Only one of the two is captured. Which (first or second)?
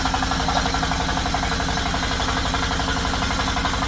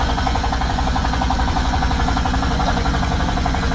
first